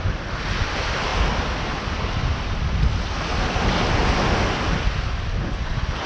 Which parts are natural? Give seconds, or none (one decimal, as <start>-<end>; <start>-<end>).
0.0-6.1